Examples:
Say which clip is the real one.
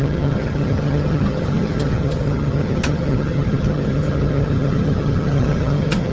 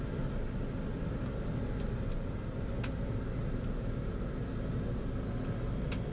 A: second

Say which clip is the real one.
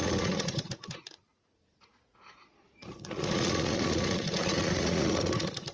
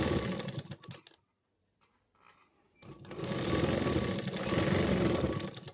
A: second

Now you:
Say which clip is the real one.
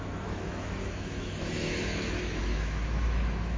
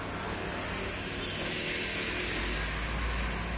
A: second